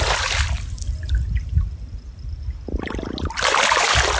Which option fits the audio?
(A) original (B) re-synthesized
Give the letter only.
A